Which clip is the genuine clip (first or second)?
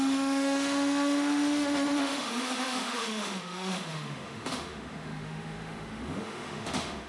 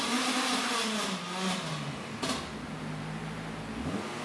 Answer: second